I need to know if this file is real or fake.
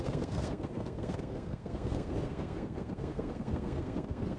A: fake